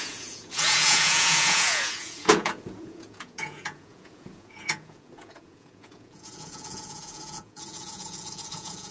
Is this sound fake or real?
fake